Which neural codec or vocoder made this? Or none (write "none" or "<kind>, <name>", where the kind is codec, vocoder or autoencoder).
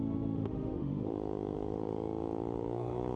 autoencoder, DAC-VAE